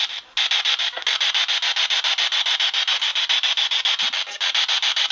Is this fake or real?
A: real